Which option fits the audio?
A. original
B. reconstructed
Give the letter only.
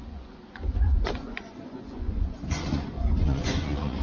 B